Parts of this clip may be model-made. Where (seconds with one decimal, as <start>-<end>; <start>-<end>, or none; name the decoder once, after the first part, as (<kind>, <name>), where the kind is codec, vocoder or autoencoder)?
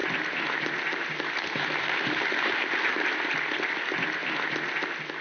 0.0-3.1 (vocoder, BigVGAN v2)